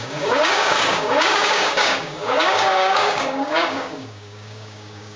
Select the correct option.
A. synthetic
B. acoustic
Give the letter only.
A